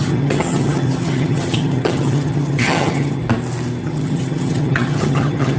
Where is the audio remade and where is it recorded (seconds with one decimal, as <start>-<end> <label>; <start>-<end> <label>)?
0.0-3.2 remade; 3.2-3.8 recorded; 3.8-5.6 remade

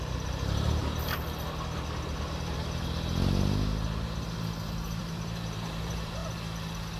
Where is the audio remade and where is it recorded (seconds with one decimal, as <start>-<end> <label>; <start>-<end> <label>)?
0.0-0.8 remade; 0.8-5.0 recorded; 5.0-6.2 remade; 6.2-7.0 recorded

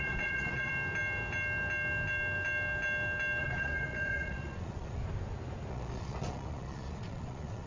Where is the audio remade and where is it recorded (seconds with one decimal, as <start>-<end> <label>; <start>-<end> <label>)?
0.0-0.7 remade; 0.7-3.4 recorded; 3.4-5.0 remade; 5.0-5.7 recorded; 5.7-7.7 remade